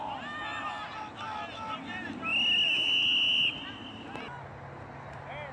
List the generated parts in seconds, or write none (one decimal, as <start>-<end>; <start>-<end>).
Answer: none